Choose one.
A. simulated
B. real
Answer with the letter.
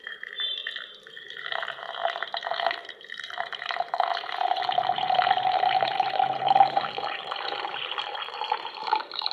A